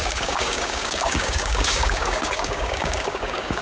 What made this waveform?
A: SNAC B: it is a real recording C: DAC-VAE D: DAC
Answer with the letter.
D